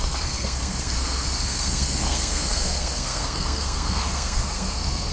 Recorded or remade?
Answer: remade